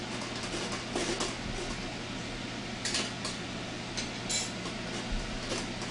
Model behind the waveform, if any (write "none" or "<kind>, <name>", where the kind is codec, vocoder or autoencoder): none